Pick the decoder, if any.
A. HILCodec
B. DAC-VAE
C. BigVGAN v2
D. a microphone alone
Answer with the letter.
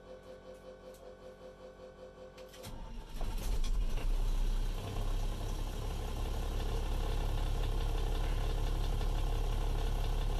D